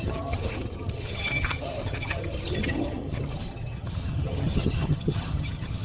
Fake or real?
fake